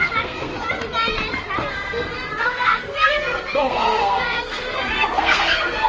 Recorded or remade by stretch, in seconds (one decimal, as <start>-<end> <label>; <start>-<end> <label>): 0.0-0.5 remade; 0.5-1.7 recorded; 1.7-5.9 remade

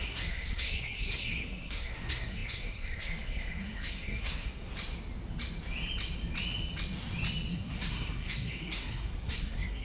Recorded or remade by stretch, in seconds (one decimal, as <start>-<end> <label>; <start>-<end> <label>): 0.0-4.7 remade; 4.7-7.5 recorded; 7.5-9.8 remade